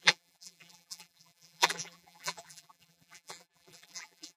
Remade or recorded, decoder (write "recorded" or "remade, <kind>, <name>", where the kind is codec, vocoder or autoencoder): remade, vocoder, BigVGAN v2